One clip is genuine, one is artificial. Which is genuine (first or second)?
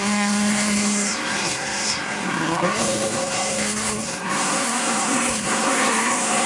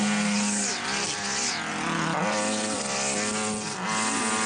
second